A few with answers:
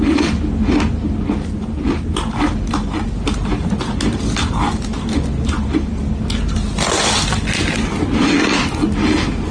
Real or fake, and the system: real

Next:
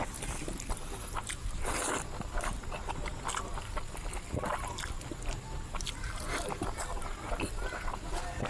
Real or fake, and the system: real